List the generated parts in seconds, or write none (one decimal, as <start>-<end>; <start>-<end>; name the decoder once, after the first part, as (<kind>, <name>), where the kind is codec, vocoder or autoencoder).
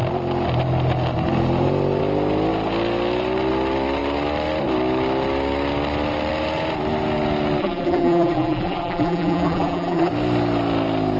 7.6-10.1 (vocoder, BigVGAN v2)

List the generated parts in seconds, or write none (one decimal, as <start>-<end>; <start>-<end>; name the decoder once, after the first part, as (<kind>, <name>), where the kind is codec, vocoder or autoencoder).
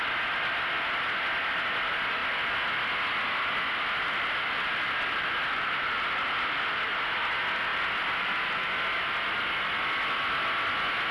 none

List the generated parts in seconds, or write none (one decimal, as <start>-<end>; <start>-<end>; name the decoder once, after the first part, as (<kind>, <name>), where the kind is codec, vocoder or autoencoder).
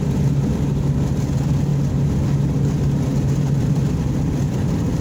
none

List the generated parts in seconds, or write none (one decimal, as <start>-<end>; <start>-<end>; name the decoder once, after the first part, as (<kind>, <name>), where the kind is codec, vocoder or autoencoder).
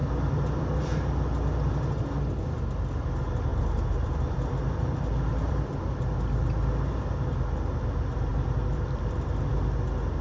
3.5-6.0 (vocoder, BigVGAN v2); 8.3-9.5